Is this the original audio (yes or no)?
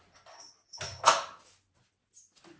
yes